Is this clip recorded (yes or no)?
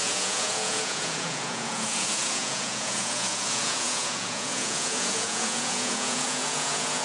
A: no